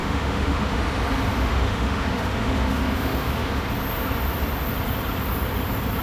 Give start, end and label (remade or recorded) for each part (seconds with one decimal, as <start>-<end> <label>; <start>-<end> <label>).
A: 0.0-0.8 remade; 0.8-1.3 recorded; 1.3-3.7 remade; 3.7-6.0 recorded